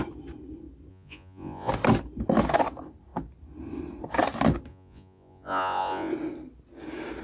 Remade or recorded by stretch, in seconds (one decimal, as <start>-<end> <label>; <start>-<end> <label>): 0.0-0.9 recorded; 0.9-1.7 remade; 1.7-4.7 recorded; 4.7-6.1 remade; 6.1-7.2 recorded